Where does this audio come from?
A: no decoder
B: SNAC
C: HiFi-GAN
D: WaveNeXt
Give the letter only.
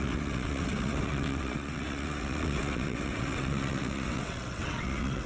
D